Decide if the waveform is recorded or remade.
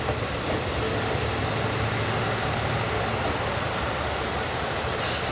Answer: recorded